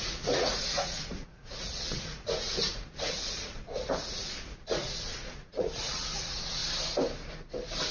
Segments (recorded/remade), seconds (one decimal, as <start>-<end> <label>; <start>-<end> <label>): 0.0-6.6 remade; 6.6-7.9 recorded